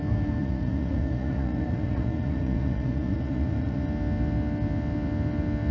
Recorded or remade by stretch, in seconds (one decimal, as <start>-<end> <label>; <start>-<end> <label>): 0.0-0.4 recorded; 0.4-3.8 remade; 3.8-5.7 recorded